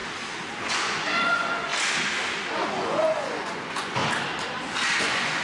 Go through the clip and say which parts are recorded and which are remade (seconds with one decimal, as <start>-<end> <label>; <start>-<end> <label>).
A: 0.0-0.6 recorded; 0.6-1.7 remade; 1.7-2.7 recorded; 2.7-4.0 remade; 4.0-5.0 recorded; 5.0-5.4 remade